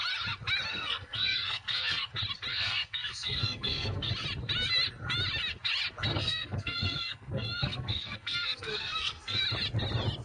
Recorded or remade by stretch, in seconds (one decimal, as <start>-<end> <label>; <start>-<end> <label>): 0.0-0.7 recorded; 0.7-2.1 remade; 2.1-2.5 recorded; 2.5-4.1 remade; 4.1-6.1 recorded; 6.1-9.4 remade; 9.4-10.2 recorded